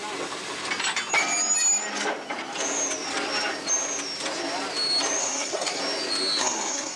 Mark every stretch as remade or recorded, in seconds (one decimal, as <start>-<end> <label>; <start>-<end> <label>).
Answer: 0.0-5.2 recorded; 5.2-5.8 remade; 5.8-6.4 recorded; 6.4-7.0 remade